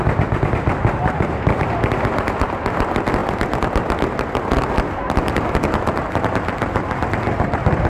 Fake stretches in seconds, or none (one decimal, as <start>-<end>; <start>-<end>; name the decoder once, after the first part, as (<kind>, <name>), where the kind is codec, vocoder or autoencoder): none